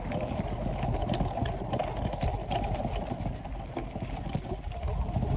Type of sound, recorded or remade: recorded